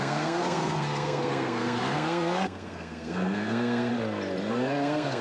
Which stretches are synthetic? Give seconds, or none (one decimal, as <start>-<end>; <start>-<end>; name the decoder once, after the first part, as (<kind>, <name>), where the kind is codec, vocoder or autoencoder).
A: 0.0-3.9 (codec, SNAC); 4.5-5.2